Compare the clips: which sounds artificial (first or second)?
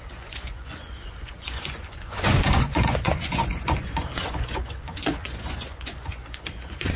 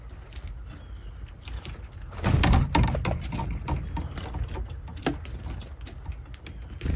first